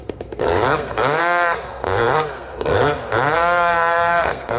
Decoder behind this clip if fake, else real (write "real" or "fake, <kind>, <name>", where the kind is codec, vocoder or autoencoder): fake, codec, SNAC